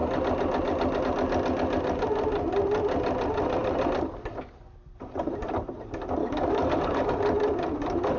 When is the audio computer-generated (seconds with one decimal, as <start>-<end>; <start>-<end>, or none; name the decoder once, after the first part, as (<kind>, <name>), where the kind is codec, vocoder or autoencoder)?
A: 6.2-7.1 (codec, DAC)